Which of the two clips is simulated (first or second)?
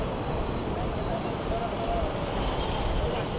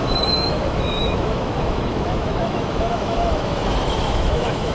second